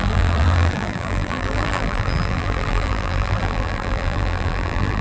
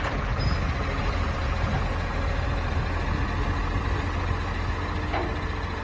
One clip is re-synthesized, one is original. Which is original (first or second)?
second